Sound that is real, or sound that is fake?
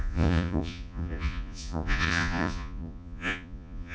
fake